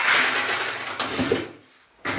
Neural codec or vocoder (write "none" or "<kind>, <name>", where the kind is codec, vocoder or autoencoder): none